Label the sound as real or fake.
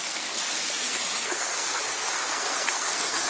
fake